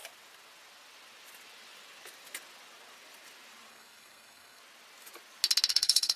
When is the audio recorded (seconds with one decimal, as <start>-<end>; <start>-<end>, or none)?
0.0-3.7; 4.6-5.7